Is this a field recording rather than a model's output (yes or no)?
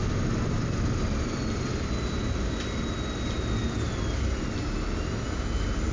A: yes